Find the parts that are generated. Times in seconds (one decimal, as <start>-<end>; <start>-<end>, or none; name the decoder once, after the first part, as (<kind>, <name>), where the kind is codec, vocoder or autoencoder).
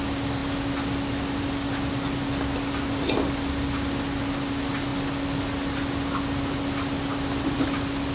none